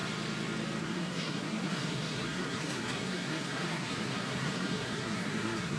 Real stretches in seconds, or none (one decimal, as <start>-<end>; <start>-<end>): 0.0-0.8